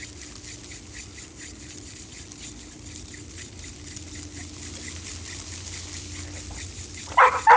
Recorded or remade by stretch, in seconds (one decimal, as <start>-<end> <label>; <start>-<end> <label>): 0.0-7.6 recorded